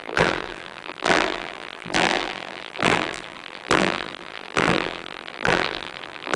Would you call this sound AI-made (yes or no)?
yes